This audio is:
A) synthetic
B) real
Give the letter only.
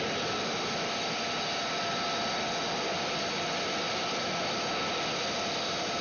B